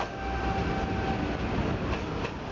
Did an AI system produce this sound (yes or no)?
no